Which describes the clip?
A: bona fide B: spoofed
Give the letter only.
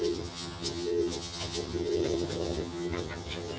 B